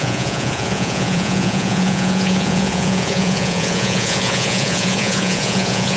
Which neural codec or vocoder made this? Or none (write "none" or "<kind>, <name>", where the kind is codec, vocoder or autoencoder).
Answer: vocoder, Vocos